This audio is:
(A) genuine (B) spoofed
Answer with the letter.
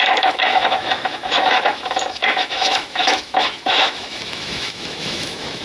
B